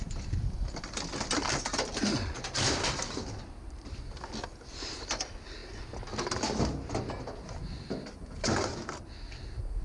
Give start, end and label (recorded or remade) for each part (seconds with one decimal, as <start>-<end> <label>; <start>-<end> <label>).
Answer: 0.0-5.6 remade; 5.6-8.5 recorded; 8.5-9.8 remade